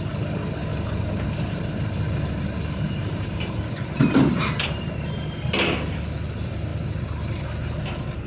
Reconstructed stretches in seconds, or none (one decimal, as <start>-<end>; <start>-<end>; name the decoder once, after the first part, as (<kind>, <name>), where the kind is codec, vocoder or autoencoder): 0.7-4.9 (vocoder, BigVGAN v2)